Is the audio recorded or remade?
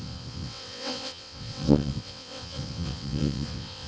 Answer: remade